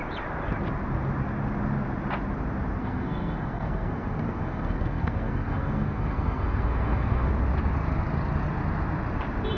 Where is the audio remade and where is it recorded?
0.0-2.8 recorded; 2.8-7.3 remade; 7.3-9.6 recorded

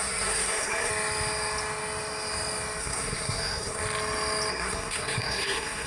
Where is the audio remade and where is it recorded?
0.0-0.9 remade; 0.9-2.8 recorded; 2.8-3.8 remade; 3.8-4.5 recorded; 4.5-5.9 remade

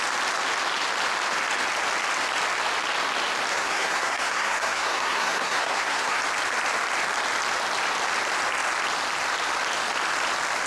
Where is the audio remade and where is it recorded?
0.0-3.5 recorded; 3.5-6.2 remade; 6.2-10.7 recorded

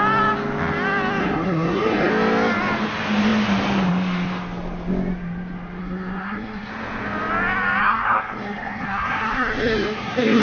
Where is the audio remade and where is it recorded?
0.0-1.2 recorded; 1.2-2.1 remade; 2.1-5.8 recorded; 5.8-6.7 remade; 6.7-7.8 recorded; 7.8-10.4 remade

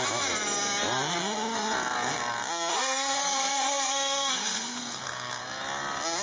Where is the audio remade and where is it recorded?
0.0-2.7 recorded; 2.7-5.4 remade; 5.4-6.2 recorded

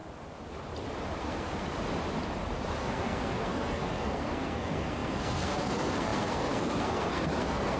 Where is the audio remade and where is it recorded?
0.0-1.2 recorded; 1.2-1.7 remade; 1.7-2.8 recorded; 2.8-7.8 remade